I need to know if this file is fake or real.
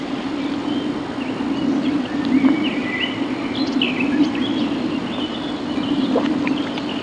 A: real